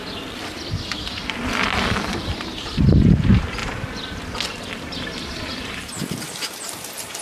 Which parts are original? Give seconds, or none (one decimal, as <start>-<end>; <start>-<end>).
none